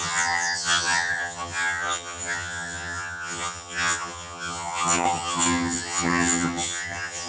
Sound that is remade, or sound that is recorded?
remade